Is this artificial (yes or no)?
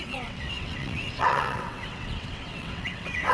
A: yes